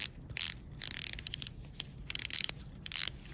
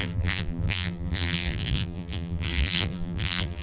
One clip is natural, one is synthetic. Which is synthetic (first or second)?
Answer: second